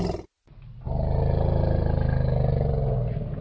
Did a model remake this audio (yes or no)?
no